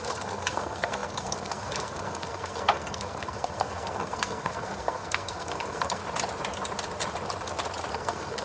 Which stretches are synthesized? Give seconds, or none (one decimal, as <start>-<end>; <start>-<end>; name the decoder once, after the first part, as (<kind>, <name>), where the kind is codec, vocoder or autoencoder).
0.0-6.0 (codec, SNAC); 7.9-8.4